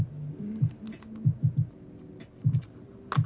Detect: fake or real real